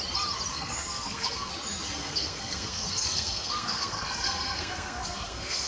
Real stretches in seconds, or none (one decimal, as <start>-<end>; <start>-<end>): 0.0-0.5; 1.5-2.0